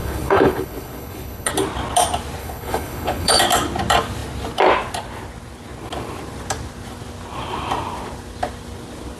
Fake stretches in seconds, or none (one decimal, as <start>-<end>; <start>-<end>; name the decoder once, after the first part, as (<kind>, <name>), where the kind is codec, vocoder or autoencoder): 0.0-1.5 (codec, HILCodec); 2.4-3.4